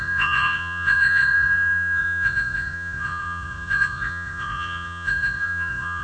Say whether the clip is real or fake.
fake